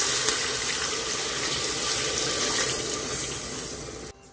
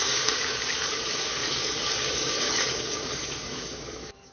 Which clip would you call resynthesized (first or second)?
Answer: second